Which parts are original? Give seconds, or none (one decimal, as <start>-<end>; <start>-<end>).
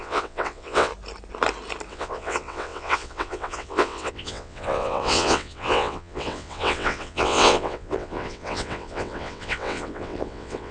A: 0.9-1.9